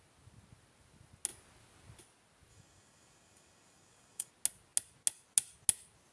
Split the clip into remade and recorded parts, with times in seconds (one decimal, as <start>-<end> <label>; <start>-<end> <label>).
0.0-2.5 recorded; 2.5-4.3 remade; 4.3-6.1 recorded